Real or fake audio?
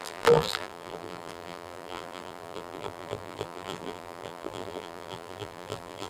fake